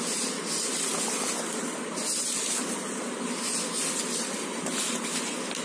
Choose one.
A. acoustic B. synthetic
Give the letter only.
A